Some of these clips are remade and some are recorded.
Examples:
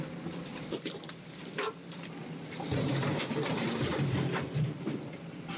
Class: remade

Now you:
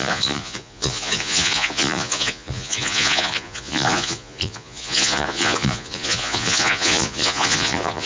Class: remade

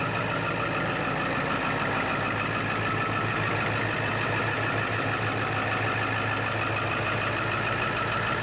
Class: recorded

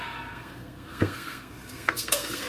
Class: remade